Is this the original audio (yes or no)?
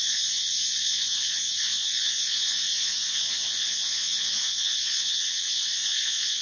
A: no